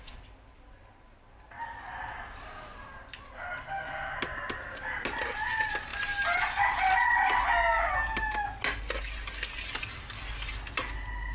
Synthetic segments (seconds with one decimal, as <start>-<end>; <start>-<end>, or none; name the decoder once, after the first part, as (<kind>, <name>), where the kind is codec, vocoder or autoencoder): none